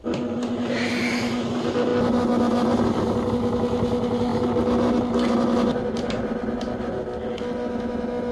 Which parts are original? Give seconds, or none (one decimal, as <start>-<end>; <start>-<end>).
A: 0.0-8.3